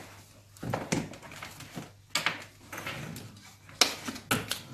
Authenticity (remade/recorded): recorded